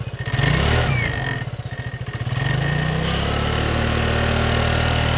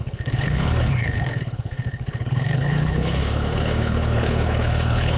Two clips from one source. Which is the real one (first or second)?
first